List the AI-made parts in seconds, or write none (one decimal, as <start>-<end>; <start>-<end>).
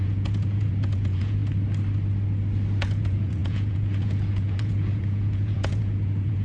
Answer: 0.0-1.4; 2.8-6.4